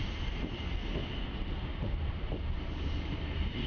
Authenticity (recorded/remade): recorded